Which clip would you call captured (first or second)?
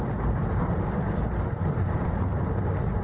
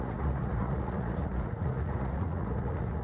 first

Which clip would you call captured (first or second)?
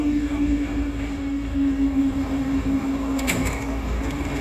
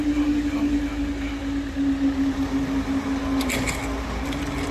second